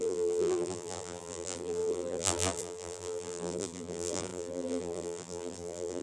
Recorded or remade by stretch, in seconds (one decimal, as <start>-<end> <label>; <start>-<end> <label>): 0.0-6.0 remade